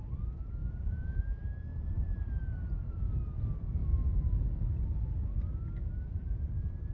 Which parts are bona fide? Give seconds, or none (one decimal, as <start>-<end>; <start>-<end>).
0.0-0.6; 1.2-1.7; 3.1-6.2